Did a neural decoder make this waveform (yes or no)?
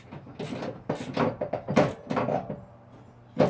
no